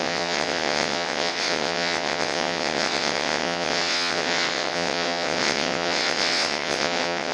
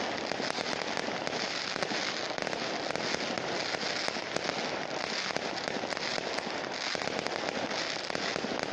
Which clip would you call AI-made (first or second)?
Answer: first